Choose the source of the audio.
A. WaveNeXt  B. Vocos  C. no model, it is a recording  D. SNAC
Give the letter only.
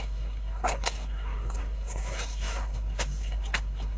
D